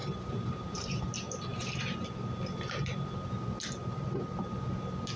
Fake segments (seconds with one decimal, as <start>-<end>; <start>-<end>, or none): 0.0-1.0

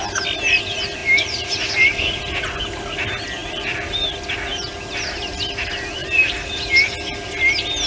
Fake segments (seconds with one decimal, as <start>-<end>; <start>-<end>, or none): 3.4-4.1; 4.5-5.2; 6.0-6.7

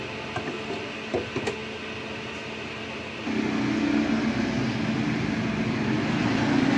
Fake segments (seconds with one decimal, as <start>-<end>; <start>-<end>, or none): none

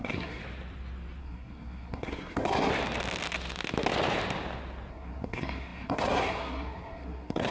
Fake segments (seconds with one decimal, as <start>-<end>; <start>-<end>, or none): 0.0-0.4; 1.2-2.7; 4.9-7.5

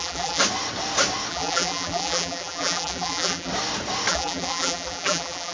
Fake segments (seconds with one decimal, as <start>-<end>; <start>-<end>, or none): 0.0-0.4; 1.3-3.5; 4.1-5.5

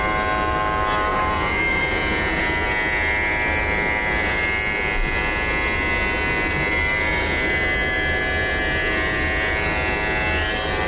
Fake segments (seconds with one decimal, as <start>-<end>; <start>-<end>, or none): 1.1-2.4